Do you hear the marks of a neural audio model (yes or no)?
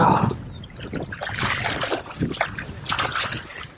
no